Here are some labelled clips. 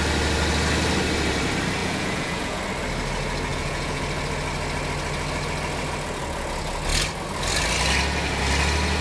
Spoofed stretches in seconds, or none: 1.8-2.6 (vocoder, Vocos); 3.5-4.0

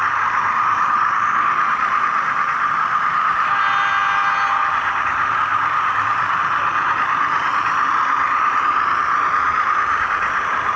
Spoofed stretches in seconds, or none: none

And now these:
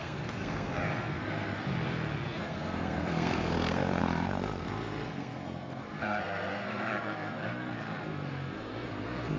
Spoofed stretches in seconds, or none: 0.0-1.7 (codec, SNAC); 2.4-9.4

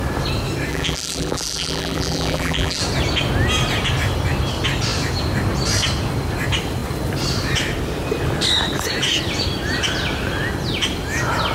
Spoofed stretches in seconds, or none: 0.7-2.8 (vocoder, BigVGAN v2)

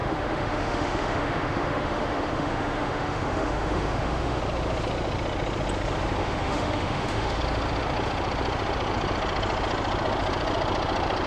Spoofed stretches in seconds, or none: 0.0-4.4 (autoencoder, DAC-VAE); 6.2-7.4

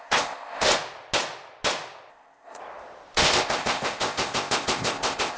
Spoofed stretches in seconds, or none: 0.0-0.7 (codec, ZipCodec); 2.1-2.6; 3.2-5.4